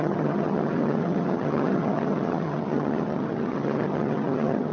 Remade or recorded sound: remade